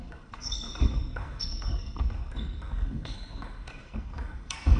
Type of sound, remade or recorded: remade